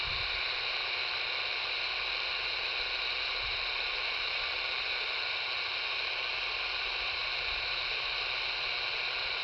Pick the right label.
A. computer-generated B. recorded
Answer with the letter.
B